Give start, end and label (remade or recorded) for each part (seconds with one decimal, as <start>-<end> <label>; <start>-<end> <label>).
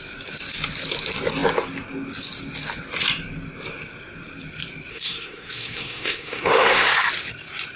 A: 0.0-4.9 recorded; 4.9-7.0 remade; 7.0-7.8 recorded